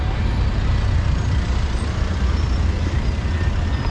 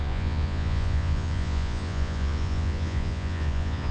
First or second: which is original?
first